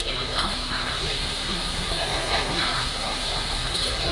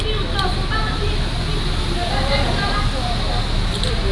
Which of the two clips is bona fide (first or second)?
second